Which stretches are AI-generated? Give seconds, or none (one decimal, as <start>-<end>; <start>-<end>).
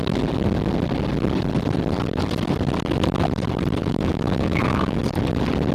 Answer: 3.8-5.0